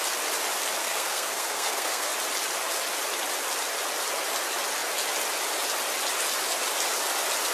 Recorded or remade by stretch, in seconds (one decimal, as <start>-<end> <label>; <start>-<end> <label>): 0.0-0.8 recorded; 0.8-2.1 remade; 2.1-7.5 recorded